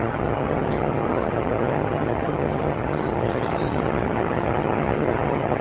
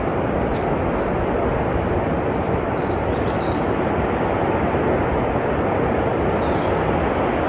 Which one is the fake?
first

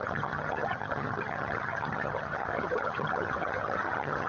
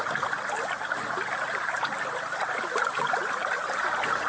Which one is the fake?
first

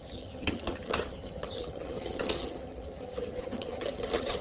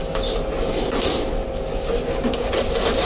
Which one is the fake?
first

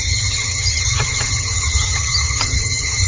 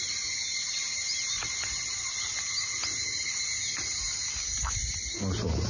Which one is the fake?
first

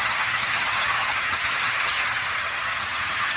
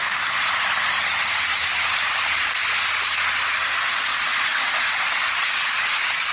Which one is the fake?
first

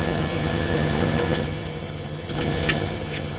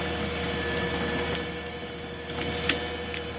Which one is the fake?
first